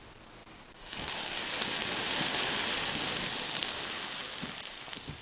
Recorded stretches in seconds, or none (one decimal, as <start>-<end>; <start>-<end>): 0.0-5.2